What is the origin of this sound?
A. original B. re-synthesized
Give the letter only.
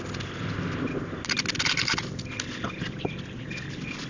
A